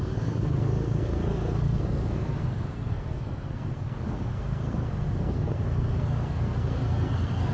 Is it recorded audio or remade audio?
remade